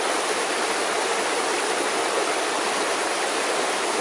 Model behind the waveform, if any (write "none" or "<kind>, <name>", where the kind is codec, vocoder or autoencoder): none